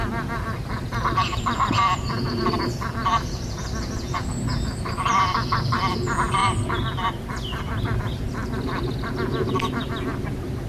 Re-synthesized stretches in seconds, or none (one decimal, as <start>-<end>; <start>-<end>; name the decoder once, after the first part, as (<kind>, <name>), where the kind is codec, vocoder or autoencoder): 0.0-5.2 (vocoder, BigVGAN v2); 6.4-8.0; 8.4-9.1